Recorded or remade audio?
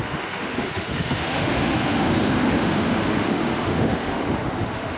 remade